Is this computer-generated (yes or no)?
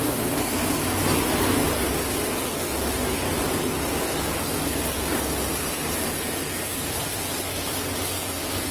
no